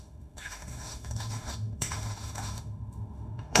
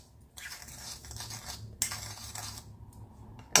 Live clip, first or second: second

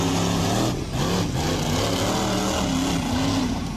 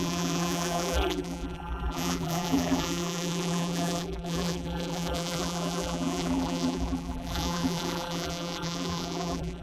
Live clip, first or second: first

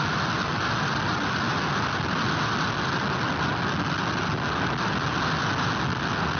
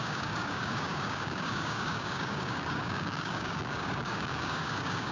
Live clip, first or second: first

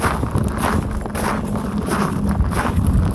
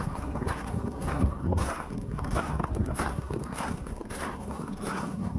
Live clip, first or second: first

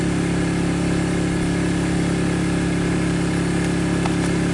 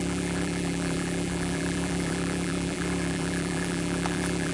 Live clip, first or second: first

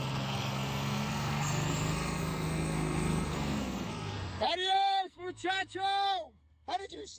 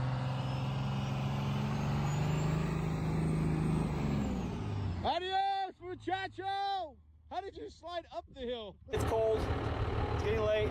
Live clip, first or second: second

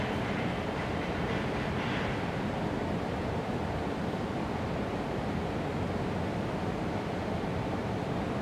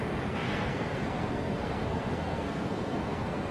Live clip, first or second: first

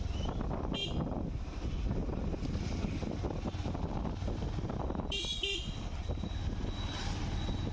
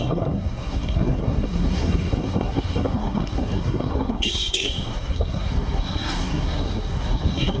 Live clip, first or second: first